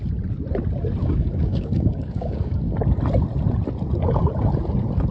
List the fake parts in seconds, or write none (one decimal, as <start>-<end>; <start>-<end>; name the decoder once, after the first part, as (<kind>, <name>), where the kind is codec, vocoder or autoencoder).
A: 1.0-2.6 (codec, DAC)